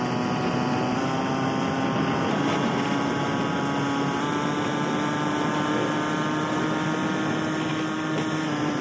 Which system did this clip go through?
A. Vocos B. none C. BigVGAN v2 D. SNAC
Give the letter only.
B